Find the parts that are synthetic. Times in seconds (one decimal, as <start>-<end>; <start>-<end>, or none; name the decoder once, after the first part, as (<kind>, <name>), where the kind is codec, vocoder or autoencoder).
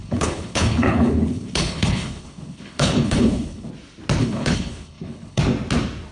0.0-3.7 (codec, HILCodec); 4.2-5.4